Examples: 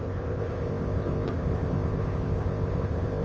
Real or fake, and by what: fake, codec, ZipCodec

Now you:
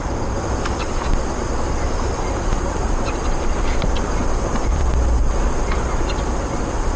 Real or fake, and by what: real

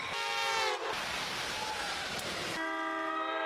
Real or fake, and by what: real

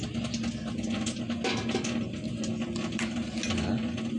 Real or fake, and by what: real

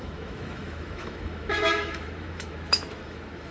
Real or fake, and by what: fake, autoencoder, DAC-VAE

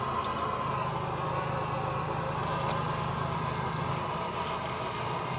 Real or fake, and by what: real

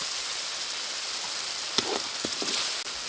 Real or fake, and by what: real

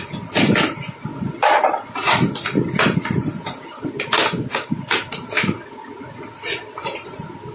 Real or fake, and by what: real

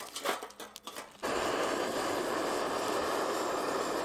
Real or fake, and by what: real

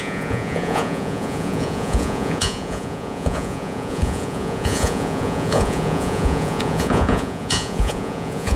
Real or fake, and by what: fake, vocoder, Vocos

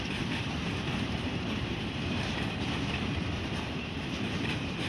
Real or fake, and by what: fake, vocoder, BigVGAN v2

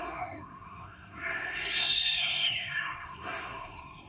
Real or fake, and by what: fake, codec, SNAC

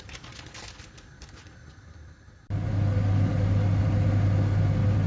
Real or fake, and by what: real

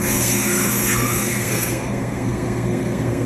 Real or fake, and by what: fake, codec, SNAC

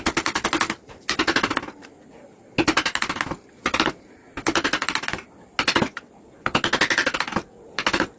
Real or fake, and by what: real